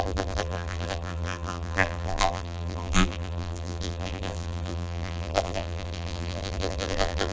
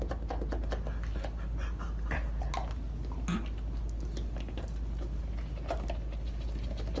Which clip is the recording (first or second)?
second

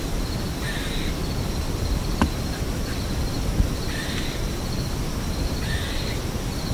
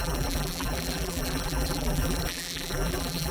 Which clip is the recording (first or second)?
first